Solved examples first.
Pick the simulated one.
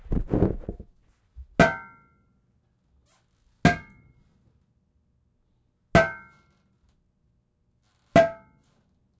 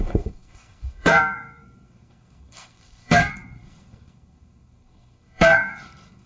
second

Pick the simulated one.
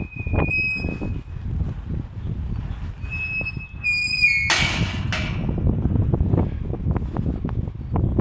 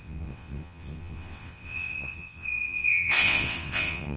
second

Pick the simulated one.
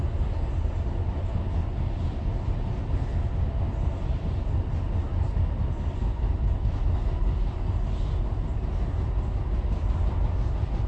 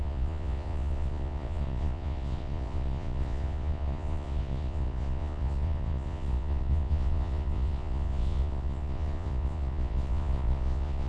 second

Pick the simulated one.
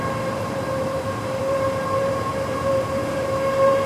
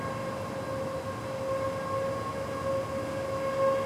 first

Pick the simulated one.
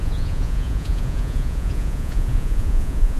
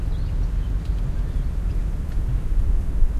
first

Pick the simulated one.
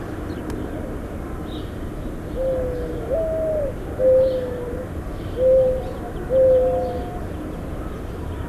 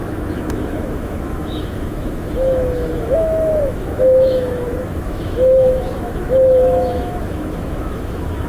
second